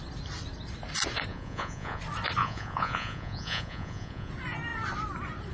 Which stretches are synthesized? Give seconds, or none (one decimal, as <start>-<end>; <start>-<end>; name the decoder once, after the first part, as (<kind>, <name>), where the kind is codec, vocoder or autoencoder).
1.3-2.0 (vocoder, Vocos); 2.4-4.3